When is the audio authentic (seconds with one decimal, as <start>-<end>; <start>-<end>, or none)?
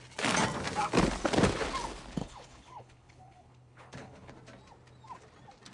0.0-2.2; 4.3-5.7